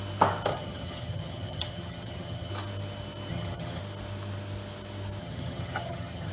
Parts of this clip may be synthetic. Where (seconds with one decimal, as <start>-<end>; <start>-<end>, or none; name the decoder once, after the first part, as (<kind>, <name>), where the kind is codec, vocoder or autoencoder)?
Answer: 0.5-2.5 (vocoder, HiFi-GAN); 3.3-3.8; 5.2-6.3